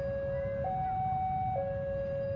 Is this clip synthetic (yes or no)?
no